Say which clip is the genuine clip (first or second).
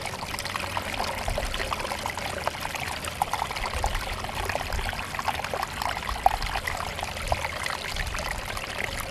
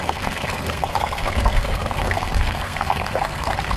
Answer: first